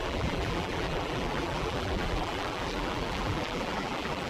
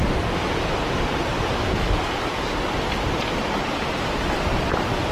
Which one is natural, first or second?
second